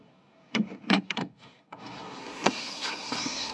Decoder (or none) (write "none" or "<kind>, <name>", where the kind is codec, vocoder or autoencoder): codec, SNAC